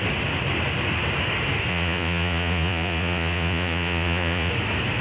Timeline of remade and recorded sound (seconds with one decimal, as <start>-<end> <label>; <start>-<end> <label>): 0.0-1.7 recorded; 1.7-4.5 remade; 4.5-5.0 recorded